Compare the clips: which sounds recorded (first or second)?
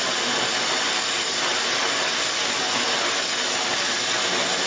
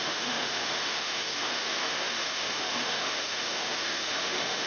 first